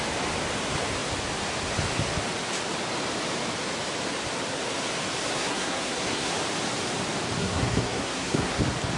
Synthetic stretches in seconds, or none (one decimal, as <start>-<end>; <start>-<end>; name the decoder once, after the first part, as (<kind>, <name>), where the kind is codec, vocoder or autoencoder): 5.3-6.3 (codec, SNAC); 7.4-8.6